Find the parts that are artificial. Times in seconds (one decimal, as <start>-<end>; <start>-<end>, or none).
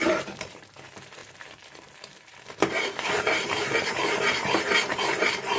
0.0-5.6